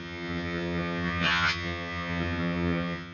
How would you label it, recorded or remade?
remade